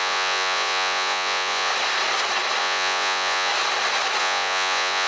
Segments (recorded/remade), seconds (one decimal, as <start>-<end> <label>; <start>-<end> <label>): 0.0-1.7 remade; 1.7-2.6 recorded; 2.6-3.5 remade; 3.5-4.2 recorded; 4.2-5.1 remade